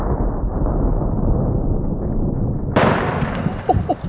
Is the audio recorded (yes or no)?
no